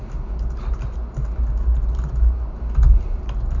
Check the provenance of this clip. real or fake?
real